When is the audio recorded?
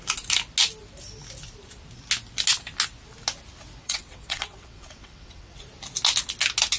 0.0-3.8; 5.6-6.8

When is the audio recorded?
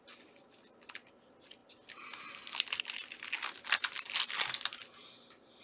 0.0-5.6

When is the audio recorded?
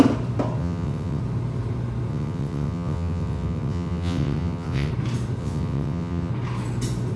0.0-0.6; 1.2-2.1; 4.9-5.4; 6.3-7.2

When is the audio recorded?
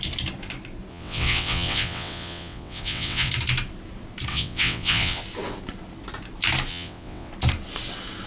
0.0-0.9; 3.3-4.3; 5.2-6.7; 7.3-8.3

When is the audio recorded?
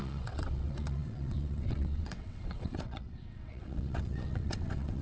none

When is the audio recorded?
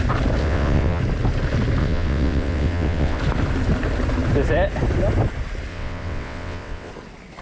0.0-0.4; 1.0-1.8; 3.2-5.7; 6.9-7.4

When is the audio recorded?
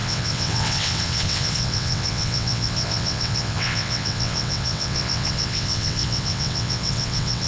none